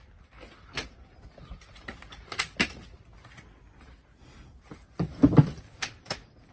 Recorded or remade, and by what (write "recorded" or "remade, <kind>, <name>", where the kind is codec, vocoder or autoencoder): recorded